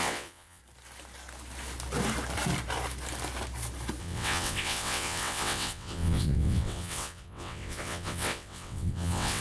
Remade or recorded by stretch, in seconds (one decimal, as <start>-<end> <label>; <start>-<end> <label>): 0.0-0.6 remade; 0.6-4.0 recorded; 4.0-9.4 remade